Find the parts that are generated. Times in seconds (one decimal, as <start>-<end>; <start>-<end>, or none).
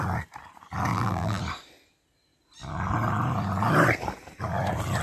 0.9-1.4